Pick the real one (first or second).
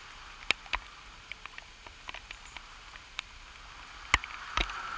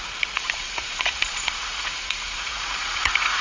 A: first